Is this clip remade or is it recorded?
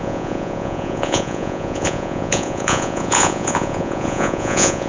remade